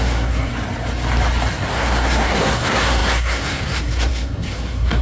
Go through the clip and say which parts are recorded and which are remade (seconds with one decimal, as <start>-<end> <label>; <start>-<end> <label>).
0.0-0.5 remade; 0.5-1.7 recorded; 1.7-5.0 remade